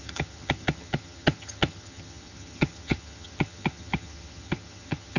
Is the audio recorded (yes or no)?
no